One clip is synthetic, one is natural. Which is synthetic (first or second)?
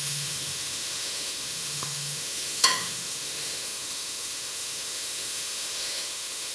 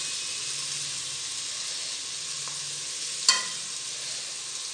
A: first